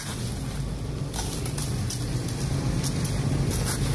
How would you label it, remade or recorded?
recorded